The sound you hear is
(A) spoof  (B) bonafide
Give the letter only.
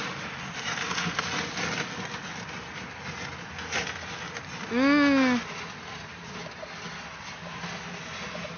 B